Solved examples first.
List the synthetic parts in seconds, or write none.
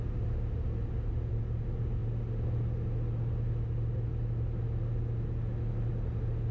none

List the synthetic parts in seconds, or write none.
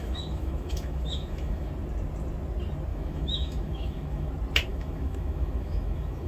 0.0-1.7; 2.9-4.3; 4.7-6.3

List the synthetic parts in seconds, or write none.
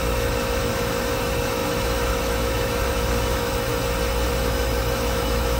0.0-3.7; 4.3-5.6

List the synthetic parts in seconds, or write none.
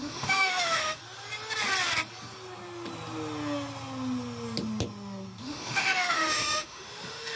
0.0-1.0; 5.4-7.4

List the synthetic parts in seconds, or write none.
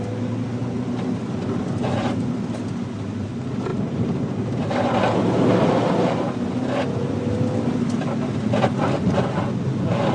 none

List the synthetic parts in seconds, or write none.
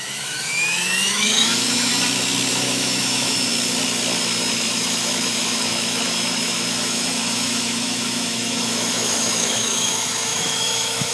0.0-1.9; 2.5-3.5; 4.5-11.1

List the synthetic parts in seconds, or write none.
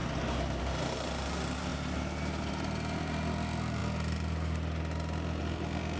none